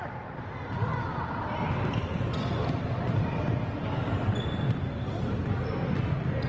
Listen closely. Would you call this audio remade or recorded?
recorded